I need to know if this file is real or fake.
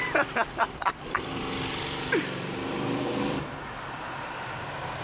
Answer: fake